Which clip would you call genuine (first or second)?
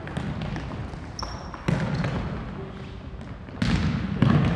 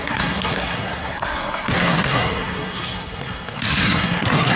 first